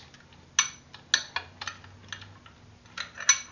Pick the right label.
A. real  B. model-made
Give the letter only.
A